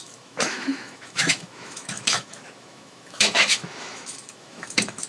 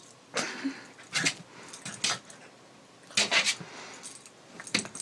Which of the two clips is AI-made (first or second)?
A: first